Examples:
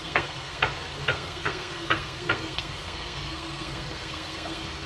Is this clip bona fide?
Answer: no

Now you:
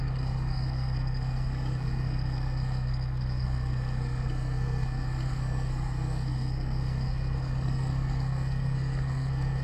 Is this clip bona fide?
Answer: no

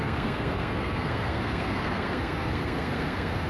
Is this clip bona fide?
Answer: no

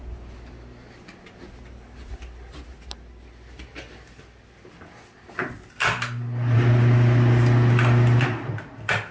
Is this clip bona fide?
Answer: yes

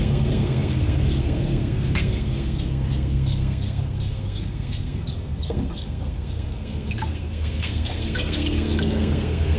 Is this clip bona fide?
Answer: no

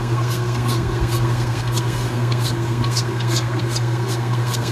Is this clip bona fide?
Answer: no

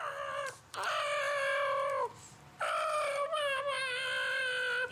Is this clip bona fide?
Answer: yes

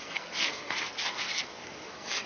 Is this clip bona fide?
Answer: no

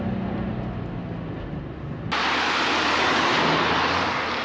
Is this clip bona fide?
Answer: yes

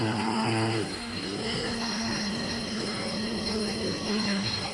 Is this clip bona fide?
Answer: no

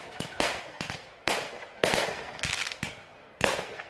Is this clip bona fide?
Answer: no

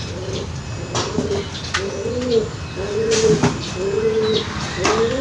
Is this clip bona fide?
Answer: yes